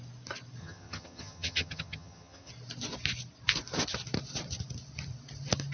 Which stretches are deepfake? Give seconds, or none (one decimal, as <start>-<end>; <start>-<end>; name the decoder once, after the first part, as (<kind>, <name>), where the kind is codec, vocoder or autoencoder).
0.6-2.5 (vocoder, HiFi-GAN)